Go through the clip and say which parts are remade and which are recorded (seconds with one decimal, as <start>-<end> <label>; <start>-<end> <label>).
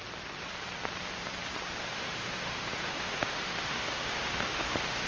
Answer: 0.0-1.8 recorded; 1.8-5.1 remade